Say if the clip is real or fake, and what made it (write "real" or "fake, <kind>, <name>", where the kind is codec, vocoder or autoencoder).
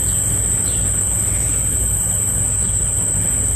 real